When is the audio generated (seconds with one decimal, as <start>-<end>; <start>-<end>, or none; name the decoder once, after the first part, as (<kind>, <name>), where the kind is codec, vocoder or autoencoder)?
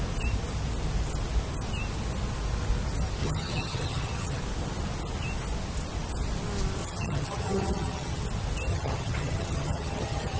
3.2-4.4 (vocoder, HiFi-GAN); 6.8-8.2; 8.7-10.4